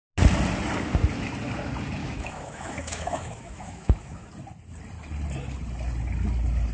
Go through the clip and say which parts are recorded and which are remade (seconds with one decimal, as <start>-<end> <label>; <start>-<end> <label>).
0.0-2.0 recorded; 2.0-4.3 remade; 4.3-6.7 recorded